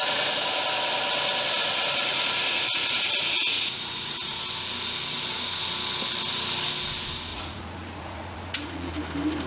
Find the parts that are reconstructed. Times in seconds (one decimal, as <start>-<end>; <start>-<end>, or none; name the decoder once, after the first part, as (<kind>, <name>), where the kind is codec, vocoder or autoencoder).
1.6-4.4 (vocoder, Vocos); 7.3-8.9